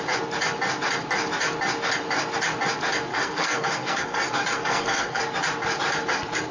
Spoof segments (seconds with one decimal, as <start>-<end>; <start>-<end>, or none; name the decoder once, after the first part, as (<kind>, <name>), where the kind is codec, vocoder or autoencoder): 3.1-5.2 (codec, SNAC)